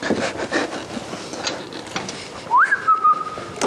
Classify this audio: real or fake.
real